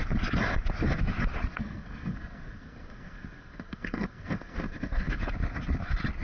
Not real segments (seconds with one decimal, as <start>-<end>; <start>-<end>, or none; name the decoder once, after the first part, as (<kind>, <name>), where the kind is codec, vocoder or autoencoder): 1.5-5.2 (codec, SNAC)